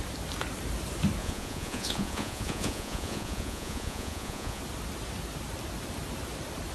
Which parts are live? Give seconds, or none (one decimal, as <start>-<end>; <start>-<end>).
0.0-1.2; 4.6-6.7